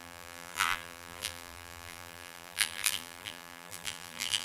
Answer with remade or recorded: remade